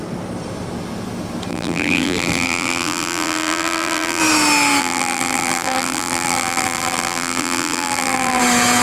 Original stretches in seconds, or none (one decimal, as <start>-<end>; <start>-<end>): 0.0-1.5; 4.2-4.8; 8.4-8.8